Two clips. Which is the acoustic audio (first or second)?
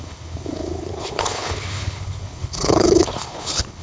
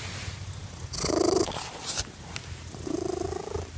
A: second